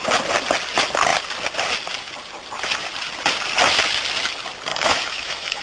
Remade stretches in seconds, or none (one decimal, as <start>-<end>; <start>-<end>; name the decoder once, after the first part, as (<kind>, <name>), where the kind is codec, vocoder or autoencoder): 4.7-5.6 (autoencoder, DAC-VAE)